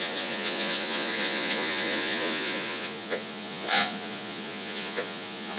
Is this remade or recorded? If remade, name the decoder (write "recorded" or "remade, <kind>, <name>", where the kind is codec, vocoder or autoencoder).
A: remade, vocoder, Vocos